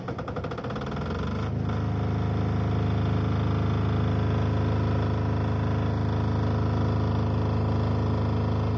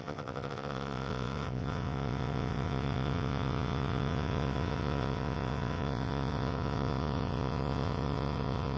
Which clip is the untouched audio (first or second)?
first